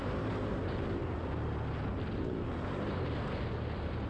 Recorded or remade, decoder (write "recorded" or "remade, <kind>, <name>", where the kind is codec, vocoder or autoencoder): recorded